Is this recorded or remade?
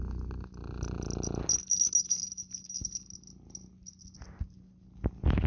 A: recorded